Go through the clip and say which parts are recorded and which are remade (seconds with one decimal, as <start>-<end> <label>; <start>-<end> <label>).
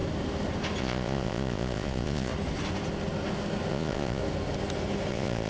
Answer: 0.0-0.8 recorded; 0.8-2.3 remade; 2.3-3.7 recorded; 3.7-4.2 remade; 4.2-5.1 recorded; 5.1-5.5 remade